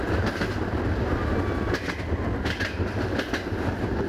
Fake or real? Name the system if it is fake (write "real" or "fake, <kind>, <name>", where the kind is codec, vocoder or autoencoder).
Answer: real